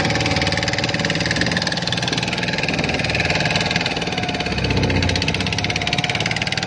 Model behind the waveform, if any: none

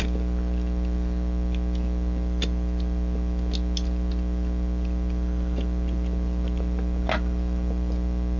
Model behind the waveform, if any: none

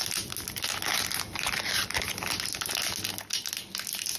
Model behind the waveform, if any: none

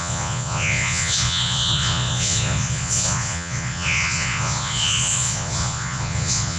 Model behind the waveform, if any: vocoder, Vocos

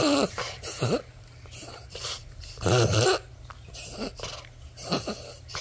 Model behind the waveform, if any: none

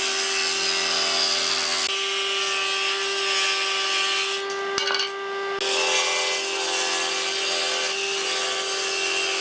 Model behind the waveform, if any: none